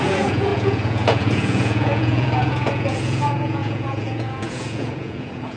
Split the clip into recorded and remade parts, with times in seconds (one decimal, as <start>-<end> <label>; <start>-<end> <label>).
0.0-5.6 remade